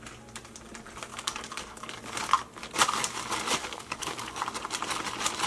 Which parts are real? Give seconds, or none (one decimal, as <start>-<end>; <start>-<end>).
0.0-1.1; 2.0-3.6; 4.4-5.5